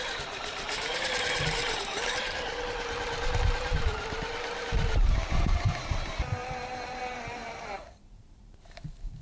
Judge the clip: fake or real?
fake